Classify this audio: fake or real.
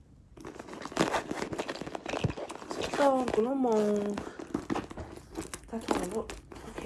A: real